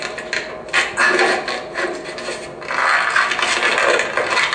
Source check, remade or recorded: recorded